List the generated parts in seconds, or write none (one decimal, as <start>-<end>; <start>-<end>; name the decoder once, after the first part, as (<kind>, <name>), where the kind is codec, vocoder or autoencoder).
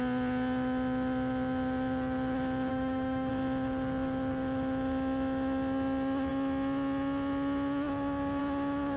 2.7-3.3 (autoencoder, DAC-VAE)